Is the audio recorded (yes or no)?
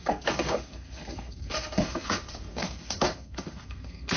no